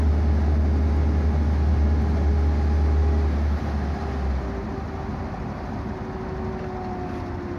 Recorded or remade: recorded